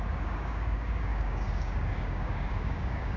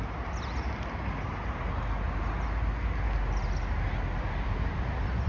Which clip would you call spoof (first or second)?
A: first